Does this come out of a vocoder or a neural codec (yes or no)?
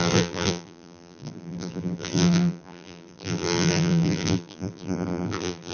yes